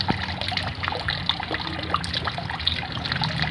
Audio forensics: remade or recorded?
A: recorded